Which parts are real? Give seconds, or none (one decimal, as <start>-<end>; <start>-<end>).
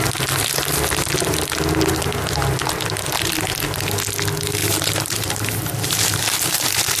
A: 0.0-4.6